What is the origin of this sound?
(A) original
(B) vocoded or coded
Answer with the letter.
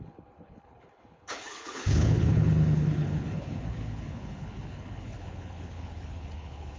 B